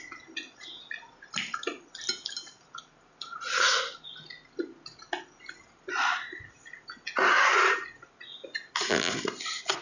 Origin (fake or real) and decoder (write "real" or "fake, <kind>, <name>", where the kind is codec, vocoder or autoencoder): real